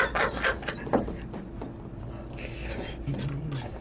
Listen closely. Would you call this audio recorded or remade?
recorded